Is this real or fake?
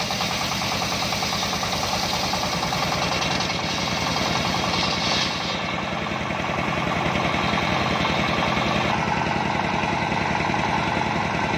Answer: real